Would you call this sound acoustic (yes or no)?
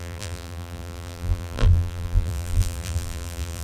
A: no